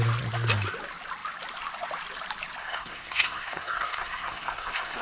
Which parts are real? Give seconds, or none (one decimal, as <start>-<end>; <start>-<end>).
0.0-2.6